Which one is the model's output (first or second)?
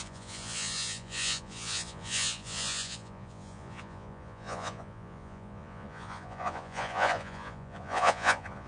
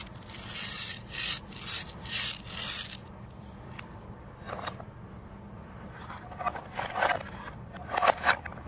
first